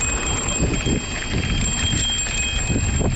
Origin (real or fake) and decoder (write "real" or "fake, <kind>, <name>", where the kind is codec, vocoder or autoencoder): real